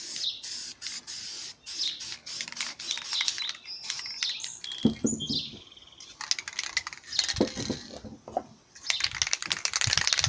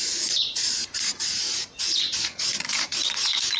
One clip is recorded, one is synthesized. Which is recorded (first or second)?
first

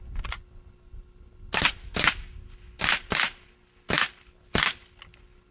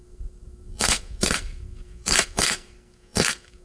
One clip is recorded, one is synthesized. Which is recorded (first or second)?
first